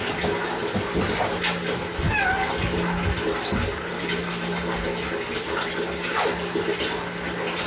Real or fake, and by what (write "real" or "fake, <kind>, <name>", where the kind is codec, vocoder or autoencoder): real